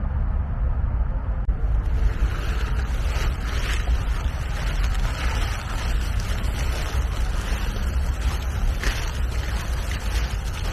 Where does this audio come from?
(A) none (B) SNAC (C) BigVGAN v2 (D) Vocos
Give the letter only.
A